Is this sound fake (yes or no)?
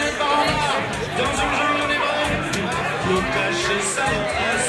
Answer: no